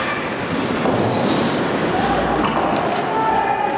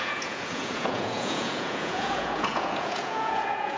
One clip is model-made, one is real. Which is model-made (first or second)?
second